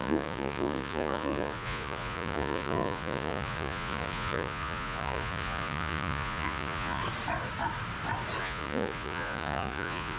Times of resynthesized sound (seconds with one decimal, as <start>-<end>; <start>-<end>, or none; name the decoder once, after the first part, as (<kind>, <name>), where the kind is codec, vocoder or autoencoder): 0.0-7.0 (vocoder, Vocos); 8.4-10.2